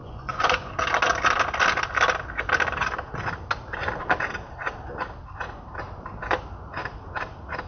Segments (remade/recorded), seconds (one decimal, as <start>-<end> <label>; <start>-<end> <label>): 0.0-0.7 remade; 0.7-7.7 recorded